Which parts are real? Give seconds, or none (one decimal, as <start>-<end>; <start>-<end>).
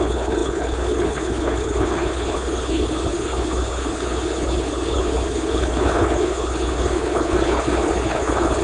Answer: none